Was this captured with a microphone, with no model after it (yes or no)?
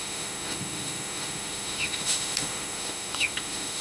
no